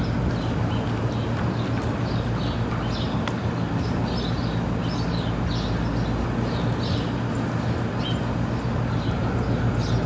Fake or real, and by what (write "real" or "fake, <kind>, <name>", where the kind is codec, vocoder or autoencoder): real